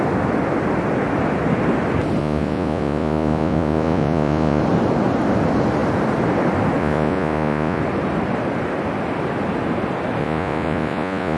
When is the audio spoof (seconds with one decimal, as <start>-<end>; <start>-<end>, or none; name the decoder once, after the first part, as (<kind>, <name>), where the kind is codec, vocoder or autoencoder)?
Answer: 2.2-4.6 (vocoder, Vocos); 6.8-7.8; 10.2-11.4